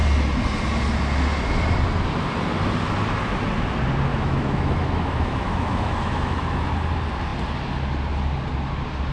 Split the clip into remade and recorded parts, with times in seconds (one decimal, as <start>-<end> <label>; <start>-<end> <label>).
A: 0.0-4.1 recorded; 4.1-6.7 remade; 6.7-9.1 recorded